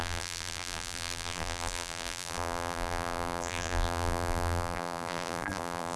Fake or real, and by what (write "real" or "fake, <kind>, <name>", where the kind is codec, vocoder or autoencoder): fake, vocoder, BigVGAN v2